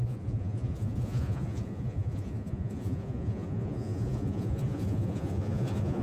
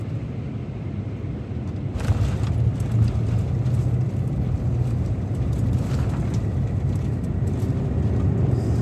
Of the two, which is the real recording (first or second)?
second